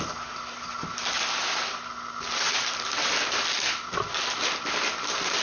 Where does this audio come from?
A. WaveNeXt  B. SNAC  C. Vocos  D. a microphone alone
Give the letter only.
D